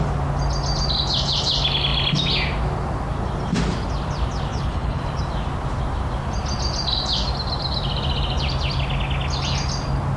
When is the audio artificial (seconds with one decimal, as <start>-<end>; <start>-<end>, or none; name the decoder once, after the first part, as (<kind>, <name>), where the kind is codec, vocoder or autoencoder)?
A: 4.5-5.0 (codec, HILCodec)